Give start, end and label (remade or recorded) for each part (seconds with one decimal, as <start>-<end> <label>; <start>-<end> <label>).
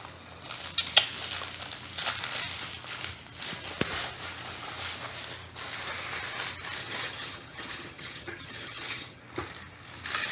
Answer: 0.0-6.8 recorded; 6.8-9.2 remade; 9.2-10.3 recorded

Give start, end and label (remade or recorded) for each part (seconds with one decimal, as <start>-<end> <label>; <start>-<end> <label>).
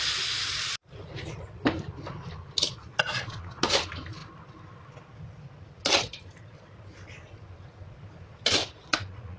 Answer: 0.0-2.8 recorded; 2.8-3.6 remade; 3.6-8.6 recorded; 8.6-9.4 remade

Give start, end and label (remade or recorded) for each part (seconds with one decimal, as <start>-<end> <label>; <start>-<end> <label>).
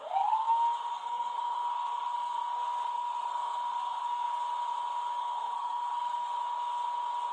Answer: 0.0-0.9 recorded; 0.9-4.3 remade; 4.3-5.2 recorded; 5.2-6.3 remade; 6.3-7.3 recorded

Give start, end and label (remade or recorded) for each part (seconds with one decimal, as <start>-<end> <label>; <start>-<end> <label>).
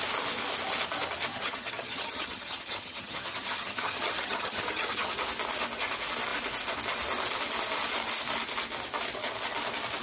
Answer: 0.0-1.3 recorded; 1.3-5.1 remade; 5.1-10.0 recorded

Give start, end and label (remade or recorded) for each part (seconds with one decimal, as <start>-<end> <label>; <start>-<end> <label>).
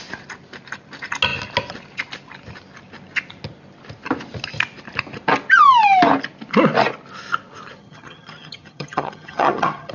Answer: 0.0-7.8 recorded; 7.8-9.9 remade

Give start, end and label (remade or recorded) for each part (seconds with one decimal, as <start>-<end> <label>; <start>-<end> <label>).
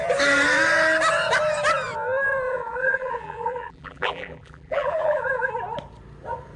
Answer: 0.0-2.5 recorded; 2.5-5.5 remade; 5.5-6.6 recorded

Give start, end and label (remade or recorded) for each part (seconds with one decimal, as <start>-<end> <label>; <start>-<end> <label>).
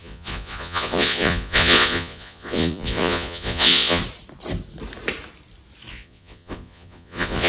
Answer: 0.0-4.0 remade; 4.0-5.9 recorded; 5.9-7.5 remade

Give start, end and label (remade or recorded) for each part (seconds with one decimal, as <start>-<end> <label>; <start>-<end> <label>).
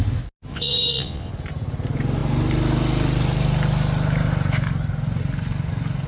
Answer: 0.0-0.5 recorded; 0.5-1.3 remade; 1.3-6.1 recorded